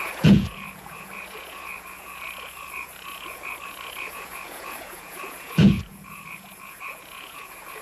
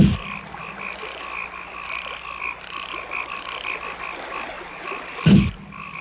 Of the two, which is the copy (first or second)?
first